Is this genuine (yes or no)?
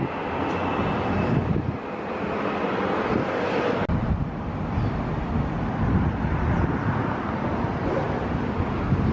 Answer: yes